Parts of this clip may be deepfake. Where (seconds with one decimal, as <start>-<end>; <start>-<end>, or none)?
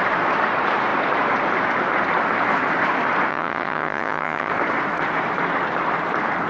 3.3-4.5